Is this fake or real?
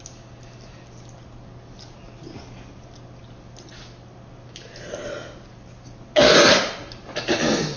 real